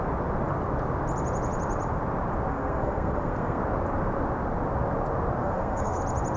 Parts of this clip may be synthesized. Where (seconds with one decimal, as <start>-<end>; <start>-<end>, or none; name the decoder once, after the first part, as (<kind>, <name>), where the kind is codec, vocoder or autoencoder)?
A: 2.5-3.6 (codec, SNAC); 5.4-6.0